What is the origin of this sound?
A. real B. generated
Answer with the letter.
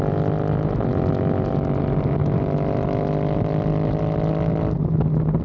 A